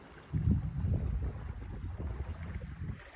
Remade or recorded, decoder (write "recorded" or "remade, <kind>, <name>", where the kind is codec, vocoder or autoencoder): recorded